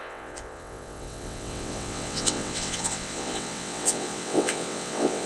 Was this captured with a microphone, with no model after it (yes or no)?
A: no